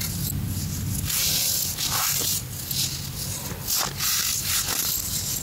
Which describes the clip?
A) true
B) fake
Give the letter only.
A